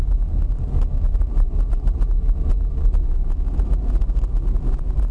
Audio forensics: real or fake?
real